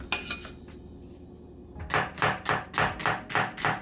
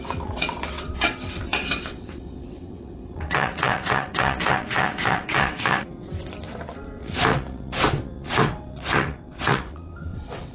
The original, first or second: first